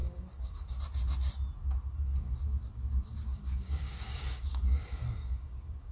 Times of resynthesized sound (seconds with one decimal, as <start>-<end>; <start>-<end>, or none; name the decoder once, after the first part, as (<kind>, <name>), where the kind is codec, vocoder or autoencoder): 0.0-0.8 (codec, DAC); 3.3-5.9